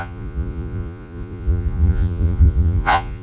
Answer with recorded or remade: remade